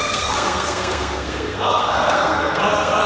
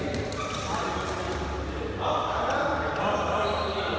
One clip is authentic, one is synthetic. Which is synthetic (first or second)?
first